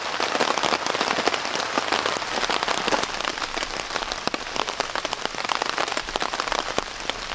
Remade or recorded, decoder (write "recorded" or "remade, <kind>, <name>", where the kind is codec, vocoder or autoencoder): recorded